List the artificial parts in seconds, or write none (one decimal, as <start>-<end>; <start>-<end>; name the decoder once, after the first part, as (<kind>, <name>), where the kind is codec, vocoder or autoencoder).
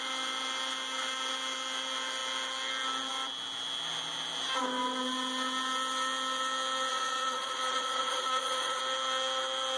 6.9-8.8 (vocoder, Vocos)